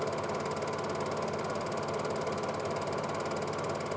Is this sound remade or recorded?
recorded